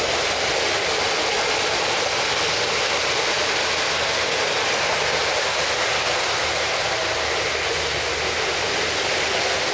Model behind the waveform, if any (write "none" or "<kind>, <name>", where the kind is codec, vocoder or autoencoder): none